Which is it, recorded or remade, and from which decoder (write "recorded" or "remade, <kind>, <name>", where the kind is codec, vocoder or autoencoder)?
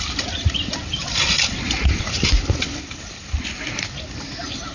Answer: recorded